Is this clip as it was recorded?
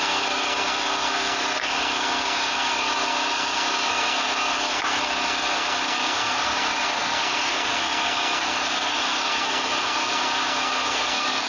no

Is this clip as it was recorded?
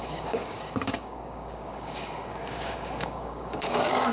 no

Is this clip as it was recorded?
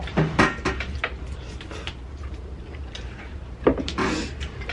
yes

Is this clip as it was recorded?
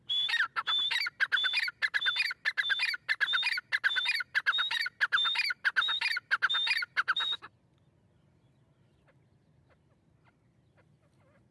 yes